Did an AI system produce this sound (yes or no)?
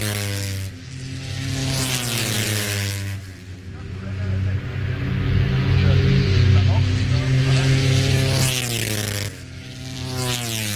no